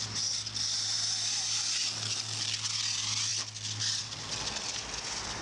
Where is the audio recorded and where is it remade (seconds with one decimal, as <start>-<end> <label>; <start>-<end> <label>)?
0.0-5.4 recorded